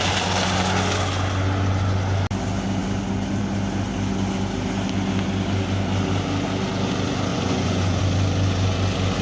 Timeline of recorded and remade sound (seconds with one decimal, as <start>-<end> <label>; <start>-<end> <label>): 0.0-7.3 recorded; 7.3-8.0 remade; 8.0-9.2 recorded